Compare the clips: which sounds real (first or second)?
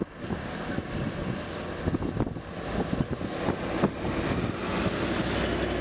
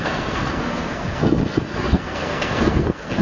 first